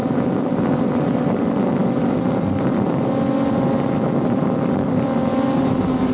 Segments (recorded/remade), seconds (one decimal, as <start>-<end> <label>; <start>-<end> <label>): 0.0-6.1 recorded